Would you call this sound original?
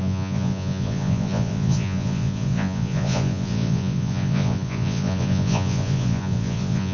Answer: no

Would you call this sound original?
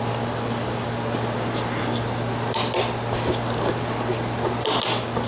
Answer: yes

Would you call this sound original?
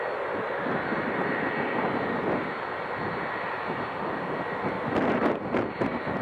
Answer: yes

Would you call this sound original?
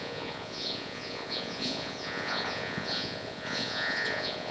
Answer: no